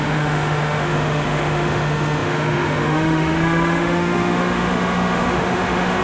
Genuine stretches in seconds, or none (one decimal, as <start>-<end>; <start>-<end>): none